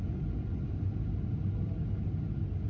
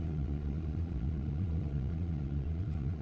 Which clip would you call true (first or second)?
first